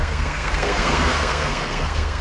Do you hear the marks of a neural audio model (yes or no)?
yes